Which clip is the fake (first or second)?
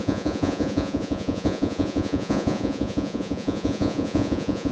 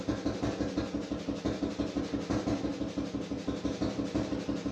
first